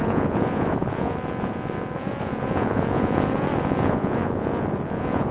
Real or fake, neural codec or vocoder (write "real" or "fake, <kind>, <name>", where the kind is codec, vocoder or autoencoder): fake, vocoder, Vocos